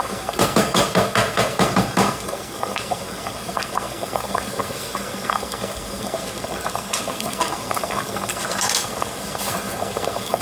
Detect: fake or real fake